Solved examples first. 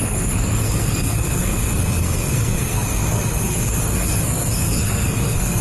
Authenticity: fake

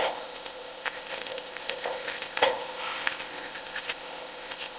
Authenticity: fake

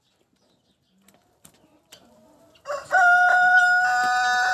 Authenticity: real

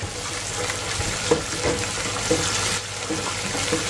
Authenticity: real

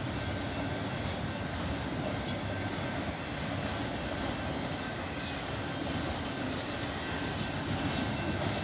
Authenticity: real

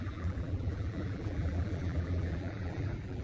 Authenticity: fake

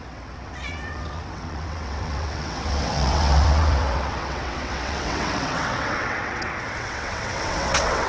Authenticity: fake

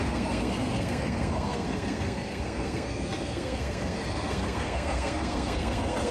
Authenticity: fake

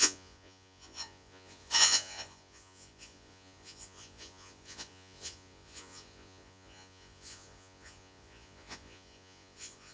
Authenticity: fake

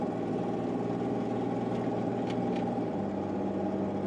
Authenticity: real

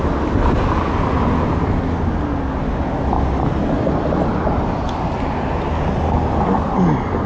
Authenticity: real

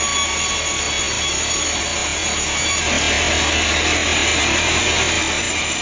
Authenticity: real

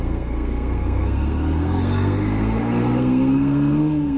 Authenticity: fake